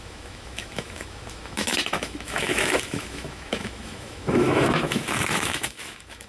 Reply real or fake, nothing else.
fake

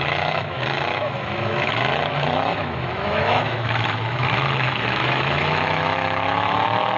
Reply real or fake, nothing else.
fake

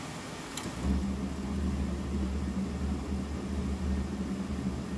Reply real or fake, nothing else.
real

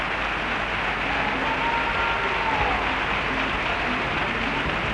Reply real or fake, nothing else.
real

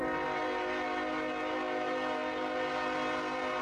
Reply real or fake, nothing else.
real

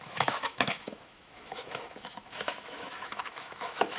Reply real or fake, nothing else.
fake